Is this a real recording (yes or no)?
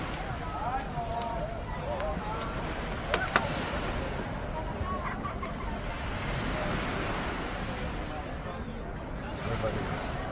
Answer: yes